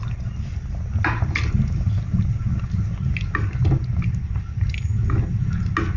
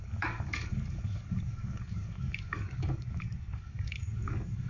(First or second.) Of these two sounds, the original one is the first